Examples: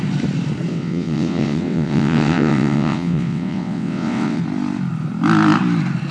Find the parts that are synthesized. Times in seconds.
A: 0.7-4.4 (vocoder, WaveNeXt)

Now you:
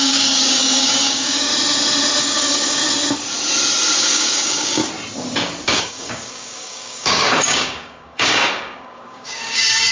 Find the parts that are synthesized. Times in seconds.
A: 0.0-1.5 (codec, DAC); 2.2-2.8; 4.0-4.8; 5.7-9.9

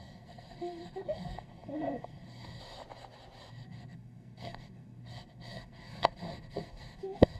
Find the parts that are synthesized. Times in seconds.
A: 0.0-2.6 (codec, SNAC); 3.5-7.4

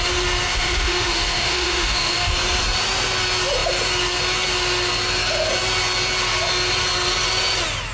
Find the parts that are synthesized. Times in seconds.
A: 0.5-2.3 (autoencoder, DAC-VAE)

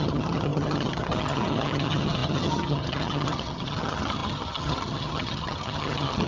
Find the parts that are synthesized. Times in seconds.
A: 0.0-6.3 (vocoder, HiFi-GAN)

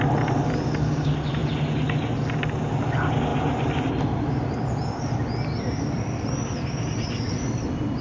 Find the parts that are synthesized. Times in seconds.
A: none

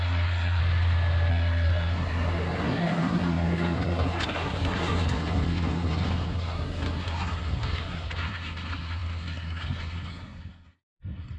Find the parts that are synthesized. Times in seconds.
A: 0.0-0.6 (codec, SNAC); 1.3-11.4

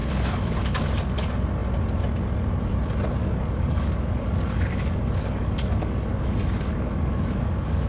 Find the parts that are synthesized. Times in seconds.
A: 0.0-0.8 (codec, DAC); 3.2-7.9